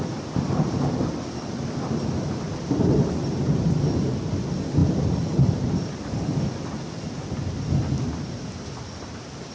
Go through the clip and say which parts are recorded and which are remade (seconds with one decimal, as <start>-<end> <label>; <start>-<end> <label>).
0.0-4.8 recorded; 4.8-6.5 remade; 6.5-9.5 recorded